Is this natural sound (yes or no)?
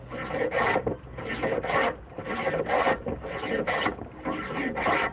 yes